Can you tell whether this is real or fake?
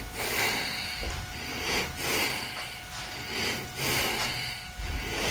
real